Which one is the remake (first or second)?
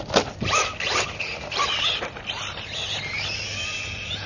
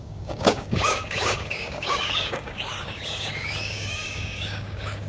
second